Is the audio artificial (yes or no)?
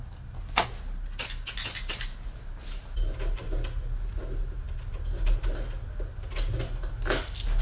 no